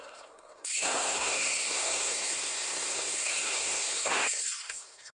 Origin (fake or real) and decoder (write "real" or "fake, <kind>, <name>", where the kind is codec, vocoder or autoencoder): fake, codec, SNAC